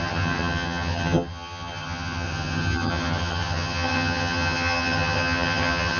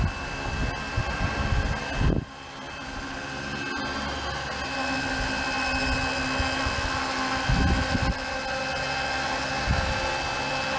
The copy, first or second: first